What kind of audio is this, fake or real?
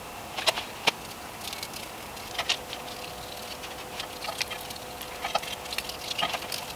real